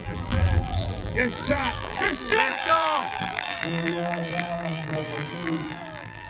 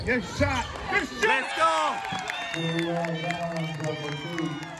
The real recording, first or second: second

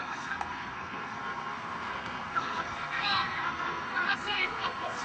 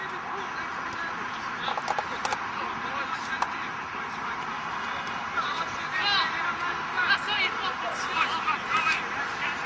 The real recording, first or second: second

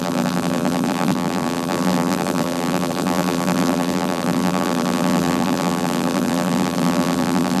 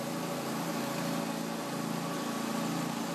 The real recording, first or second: second